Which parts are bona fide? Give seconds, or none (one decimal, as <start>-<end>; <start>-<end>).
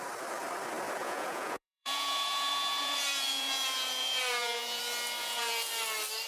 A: 0.0-1.0; 4.8-5.2; 5.7-6.3